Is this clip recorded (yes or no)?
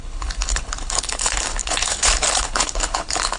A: no